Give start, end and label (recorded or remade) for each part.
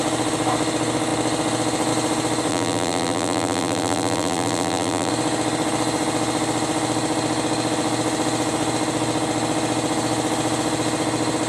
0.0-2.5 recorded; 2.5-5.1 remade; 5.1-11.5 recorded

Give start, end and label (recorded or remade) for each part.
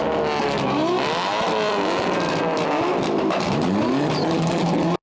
0.0-5.0 recorded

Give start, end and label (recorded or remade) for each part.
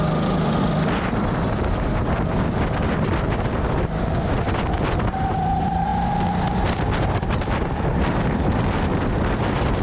0.0-5.9 remade; 5.9-7.6 recorded; 7.6-9.8 remade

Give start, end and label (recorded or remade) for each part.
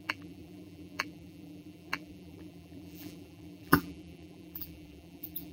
0.0-5.5 remade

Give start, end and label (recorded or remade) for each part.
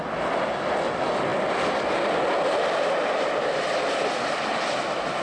0.0-5.2 recorded